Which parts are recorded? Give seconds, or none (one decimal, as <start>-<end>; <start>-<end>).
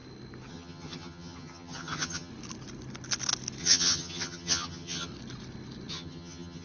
0.0-0.5; 2.3-3.6; 5.1-5.9